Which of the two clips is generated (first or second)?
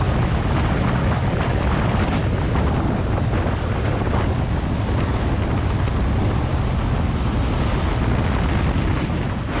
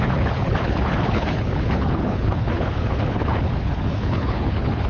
second